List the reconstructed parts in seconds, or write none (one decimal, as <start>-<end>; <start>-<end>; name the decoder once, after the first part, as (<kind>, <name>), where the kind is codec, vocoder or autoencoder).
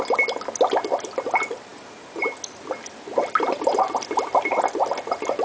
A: 0.0-1.7 (vocoder, BigVGAN v2); 3.8-5.4